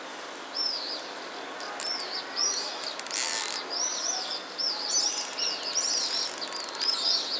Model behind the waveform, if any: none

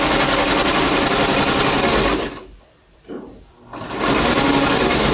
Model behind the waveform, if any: none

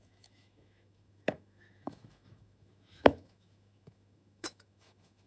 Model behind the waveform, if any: autoencoder, DAC-VAE